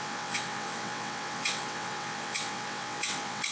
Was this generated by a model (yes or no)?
yes